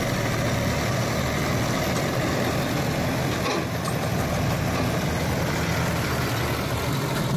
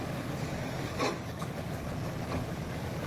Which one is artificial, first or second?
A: second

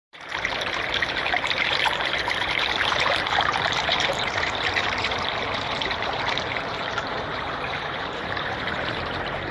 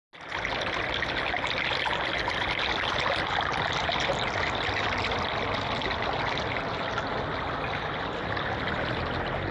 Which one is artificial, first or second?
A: first